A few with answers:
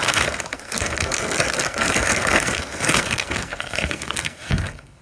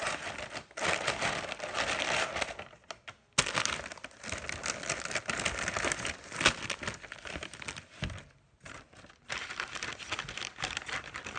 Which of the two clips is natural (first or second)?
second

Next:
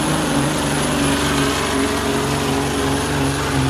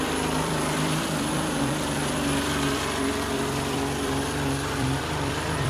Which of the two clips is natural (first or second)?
first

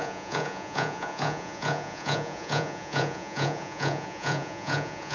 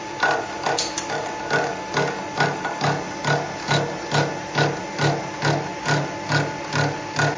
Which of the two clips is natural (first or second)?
second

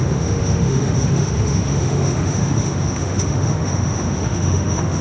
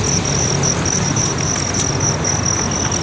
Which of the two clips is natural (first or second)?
second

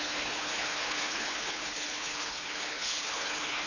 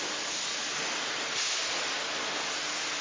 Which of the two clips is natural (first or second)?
second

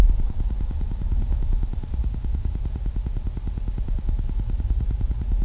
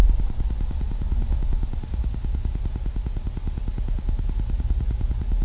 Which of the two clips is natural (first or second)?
second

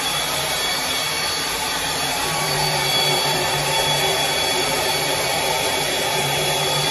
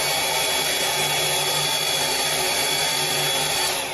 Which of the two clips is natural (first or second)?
second